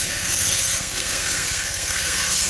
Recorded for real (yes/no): no